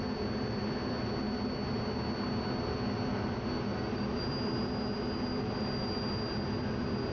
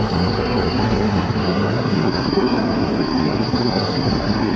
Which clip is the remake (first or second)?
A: second